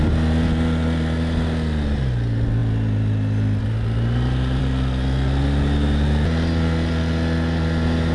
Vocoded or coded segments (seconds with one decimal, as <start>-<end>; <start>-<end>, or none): none